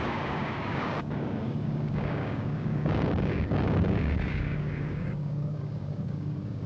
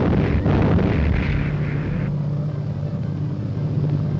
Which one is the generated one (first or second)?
first